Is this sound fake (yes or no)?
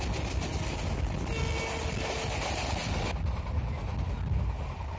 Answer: no